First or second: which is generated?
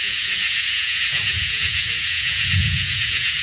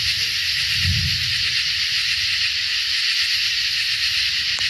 first